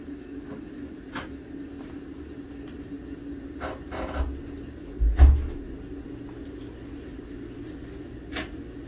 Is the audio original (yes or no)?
yes